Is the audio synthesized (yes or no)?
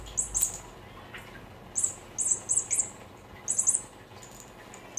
no